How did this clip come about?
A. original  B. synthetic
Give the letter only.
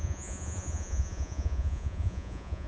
B